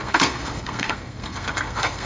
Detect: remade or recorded remade